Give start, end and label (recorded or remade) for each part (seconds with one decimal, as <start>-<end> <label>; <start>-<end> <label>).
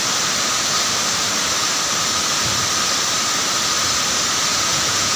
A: 0.0-4.5 recorded; 4.5-5.2 remade